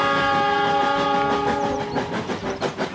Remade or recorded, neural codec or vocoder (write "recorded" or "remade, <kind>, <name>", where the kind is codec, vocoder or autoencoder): recorded